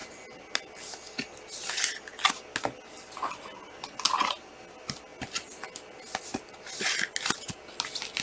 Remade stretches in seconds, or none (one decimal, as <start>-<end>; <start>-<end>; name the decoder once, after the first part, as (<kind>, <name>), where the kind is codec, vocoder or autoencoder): none